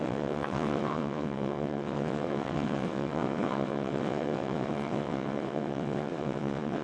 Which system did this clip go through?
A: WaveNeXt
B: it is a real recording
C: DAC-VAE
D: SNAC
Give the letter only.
A